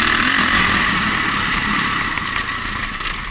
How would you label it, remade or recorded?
recorded